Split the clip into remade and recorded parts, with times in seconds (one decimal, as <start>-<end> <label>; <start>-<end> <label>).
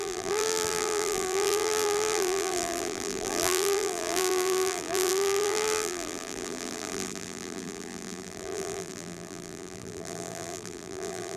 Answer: 0.0-11.4 remade